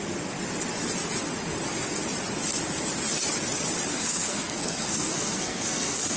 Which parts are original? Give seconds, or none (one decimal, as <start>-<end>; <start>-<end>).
0.0-3.9